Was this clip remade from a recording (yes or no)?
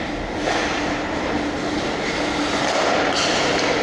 no